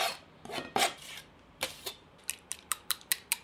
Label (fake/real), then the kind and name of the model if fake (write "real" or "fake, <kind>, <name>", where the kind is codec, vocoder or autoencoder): fake, vocoder, BigVGAN v2